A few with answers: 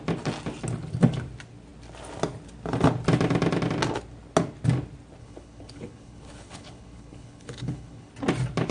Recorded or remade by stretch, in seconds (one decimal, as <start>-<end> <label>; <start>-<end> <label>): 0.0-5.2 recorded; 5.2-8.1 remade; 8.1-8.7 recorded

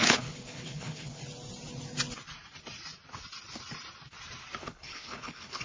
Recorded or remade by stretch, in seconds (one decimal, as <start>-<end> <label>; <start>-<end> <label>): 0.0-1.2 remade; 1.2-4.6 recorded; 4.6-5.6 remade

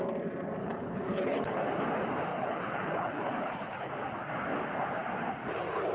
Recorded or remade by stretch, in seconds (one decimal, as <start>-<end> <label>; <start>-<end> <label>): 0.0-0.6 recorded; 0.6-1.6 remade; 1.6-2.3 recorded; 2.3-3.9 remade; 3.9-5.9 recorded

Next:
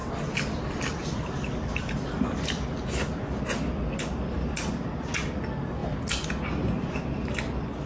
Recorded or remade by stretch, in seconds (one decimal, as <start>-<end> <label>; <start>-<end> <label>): 0.0-7.9 recorded